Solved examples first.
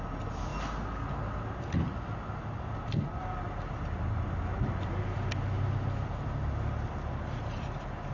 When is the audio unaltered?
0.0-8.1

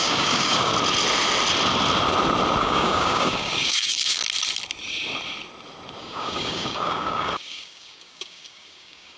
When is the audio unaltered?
0.7-2.6; 4.2-6.0

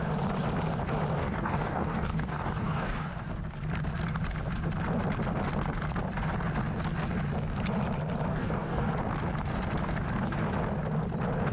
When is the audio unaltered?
0.0-1.2; 3.1-8.3; 8.9-11.5

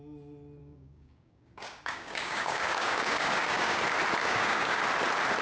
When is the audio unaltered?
0.0-0.6; 3.8-4.2; 4.8-5.4

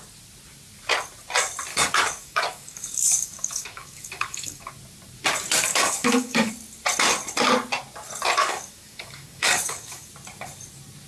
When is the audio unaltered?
0.0-1.7; 4.7-5.7; 6.5-8.4; 10.1-11.1